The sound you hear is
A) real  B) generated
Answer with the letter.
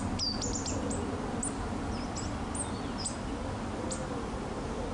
A